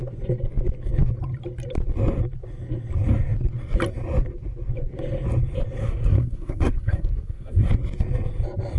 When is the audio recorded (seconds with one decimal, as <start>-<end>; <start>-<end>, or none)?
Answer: 0.0-5.8; 7.7-8.8